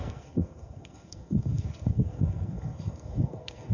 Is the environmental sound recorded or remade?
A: remade